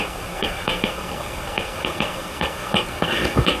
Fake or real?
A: fake